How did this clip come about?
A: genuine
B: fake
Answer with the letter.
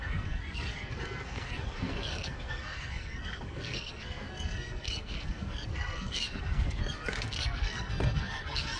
B